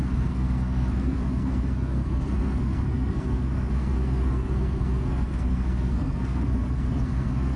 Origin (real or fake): fake